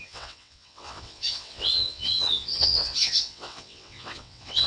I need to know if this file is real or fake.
fake